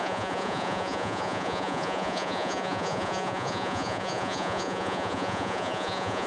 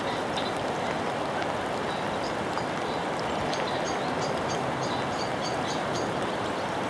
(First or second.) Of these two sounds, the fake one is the first